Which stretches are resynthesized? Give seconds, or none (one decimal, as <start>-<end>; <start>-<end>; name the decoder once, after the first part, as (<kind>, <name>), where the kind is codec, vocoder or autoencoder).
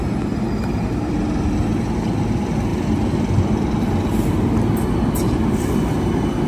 none